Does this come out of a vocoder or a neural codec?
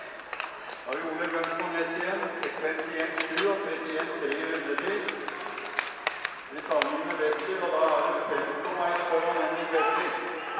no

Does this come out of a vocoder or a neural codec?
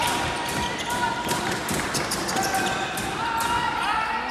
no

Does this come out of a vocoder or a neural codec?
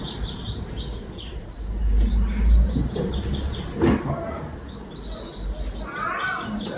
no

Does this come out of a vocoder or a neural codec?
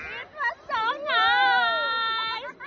no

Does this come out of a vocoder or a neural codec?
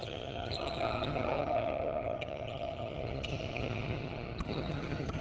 yes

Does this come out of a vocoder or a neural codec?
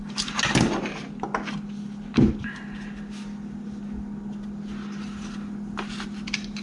no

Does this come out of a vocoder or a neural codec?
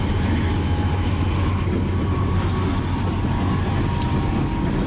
no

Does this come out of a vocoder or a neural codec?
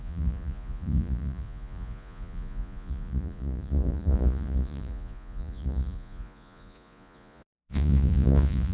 yes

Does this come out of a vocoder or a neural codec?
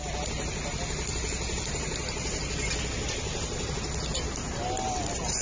no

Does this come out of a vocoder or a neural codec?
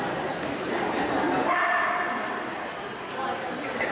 yes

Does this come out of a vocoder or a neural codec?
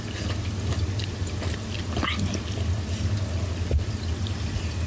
no